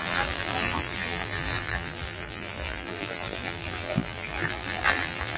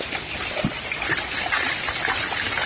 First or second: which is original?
second